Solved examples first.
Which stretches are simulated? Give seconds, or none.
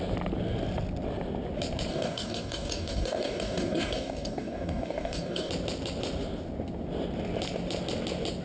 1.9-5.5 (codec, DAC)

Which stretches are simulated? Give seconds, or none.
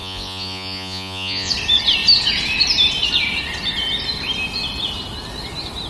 0.0-1.5 (vocoder, Vocos)